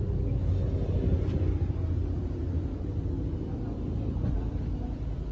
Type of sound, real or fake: real